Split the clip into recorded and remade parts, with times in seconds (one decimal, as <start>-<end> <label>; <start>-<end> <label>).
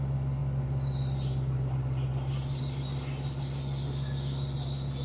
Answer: 0.0-5.0 recorded